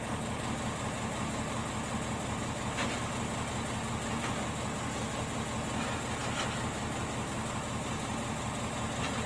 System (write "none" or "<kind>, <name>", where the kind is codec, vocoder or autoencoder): none